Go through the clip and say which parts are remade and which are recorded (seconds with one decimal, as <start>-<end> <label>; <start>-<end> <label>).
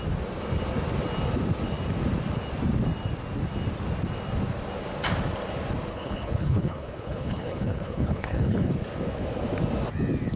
0.0-5.9 recorded; 5.9-8.7 remade; 8.7-10.4 recorded